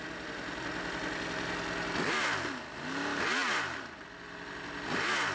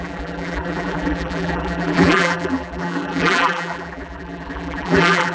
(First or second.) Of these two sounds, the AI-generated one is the second